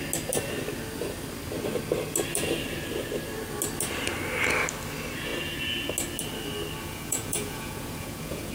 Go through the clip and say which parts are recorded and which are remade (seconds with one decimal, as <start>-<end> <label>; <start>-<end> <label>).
0.0-6.8 recorded; 6.8-8.5 remade